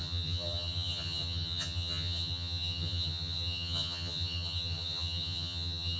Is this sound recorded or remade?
remade